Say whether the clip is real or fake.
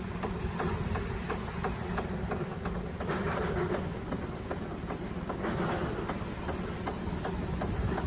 real